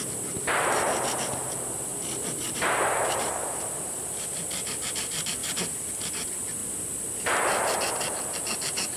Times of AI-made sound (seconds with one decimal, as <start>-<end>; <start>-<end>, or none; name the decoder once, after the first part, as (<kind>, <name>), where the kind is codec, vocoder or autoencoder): 1.9-4.4 (vocoder, BigVGAN v2); 5.4-5.9